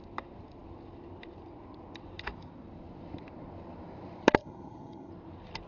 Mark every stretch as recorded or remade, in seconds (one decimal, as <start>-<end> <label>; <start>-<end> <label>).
0.0-4.4 recorded; 4.4-5.1 remade; 5.1-5.7 recorded